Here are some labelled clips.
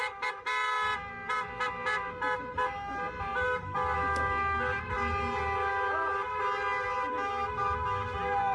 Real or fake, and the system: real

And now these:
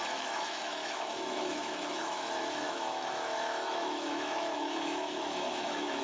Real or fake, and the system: fake, autoencoder, DAC-VAE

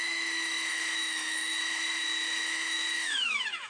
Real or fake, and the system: fake, autoencoder, DAC-VAE